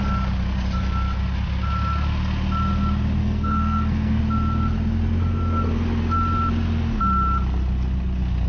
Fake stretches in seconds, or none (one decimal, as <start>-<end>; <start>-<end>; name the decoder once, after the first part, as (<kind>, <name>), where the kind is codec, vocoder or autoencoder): 3.2-4.2 (codec, SNAC)